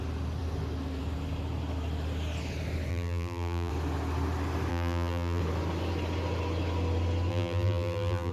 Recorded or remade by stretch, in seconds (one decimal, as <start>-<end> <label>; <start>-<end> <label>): 0.0-2.9 recorded; 2.9-3.7 remade; 3.7-4.7 recorded; 4.7-5.4 remade; 5.4-7.3 recorded; 7.3-8.3 remade